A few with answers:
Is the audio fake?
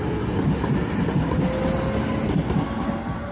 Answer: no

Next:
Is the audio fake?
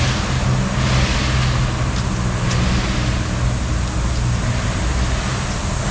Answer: no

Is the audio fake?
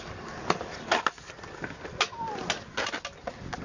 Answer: no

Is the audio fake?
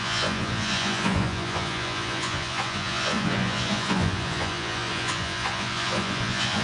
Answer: yes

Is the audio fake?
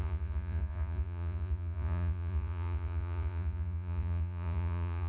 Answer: yes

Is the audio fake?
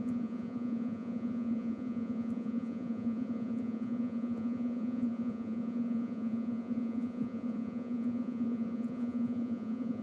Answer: yes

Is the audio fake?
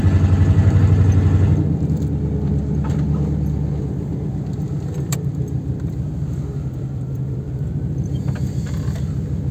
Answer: no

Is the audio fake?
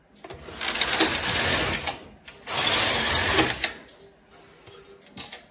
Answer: no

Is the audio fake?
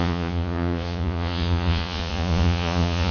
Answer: yes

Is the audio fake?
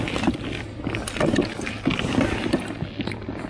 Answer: no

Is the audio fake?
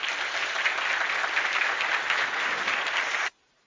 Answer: no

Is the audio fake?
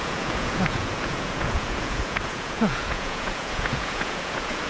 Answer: yes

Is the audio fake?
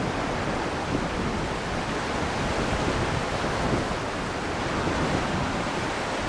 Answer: no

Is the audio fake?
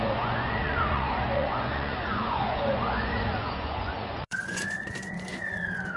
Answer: yes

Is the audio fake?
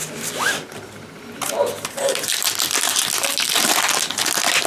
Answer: no